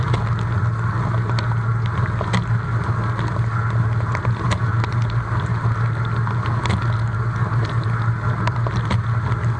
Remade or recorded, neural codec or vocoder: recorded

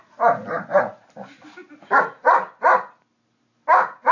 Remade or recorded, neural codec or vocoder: recorded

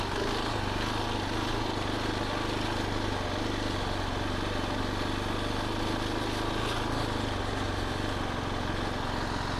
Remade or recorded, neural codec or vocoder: recorded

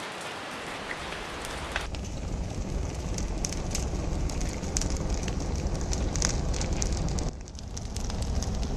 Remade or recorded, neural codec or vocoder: recorded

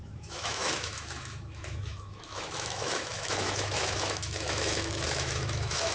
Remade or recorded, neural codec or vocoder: remade, autoencoder, DAC-VAE